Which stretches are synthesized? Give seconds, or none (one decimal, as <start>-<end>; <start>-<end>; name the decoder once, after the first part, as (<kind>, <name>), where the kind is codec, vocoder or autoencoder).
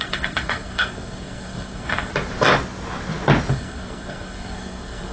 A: 0.0-2.1 (codec, SNAC); 3.5-5.1